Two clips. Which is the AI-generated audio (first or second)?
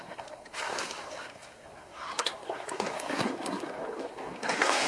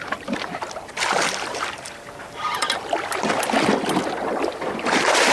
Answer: first